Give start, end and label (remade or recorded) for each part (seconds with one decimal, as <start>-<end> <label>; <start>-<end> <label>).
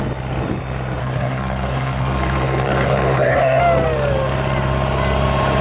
0.0-1.0 recorded; 1.0-3.6 remade; 3.6-5.6 recorded